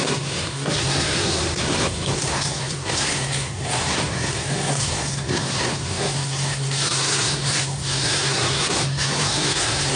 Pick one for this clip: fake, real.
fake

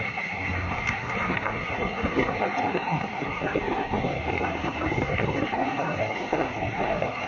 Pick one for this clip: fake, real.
fake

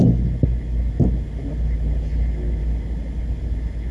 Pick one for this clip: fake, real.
real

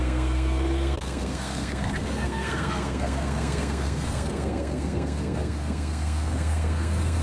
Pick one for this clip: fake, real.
fake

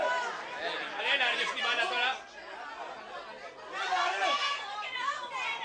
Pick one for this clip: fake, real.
real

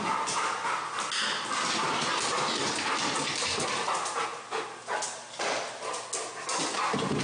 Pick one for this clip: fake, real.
real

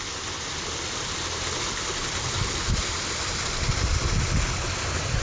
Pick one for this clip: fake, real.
real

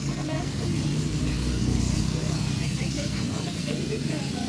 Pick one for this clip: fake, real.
fake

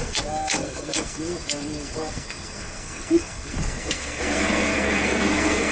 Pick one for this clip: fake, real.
fake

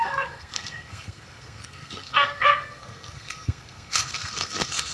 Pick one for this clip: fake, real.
fake